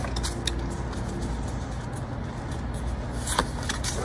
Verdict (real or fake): real